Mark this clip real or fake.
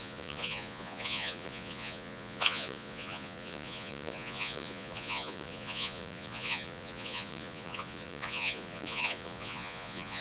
fake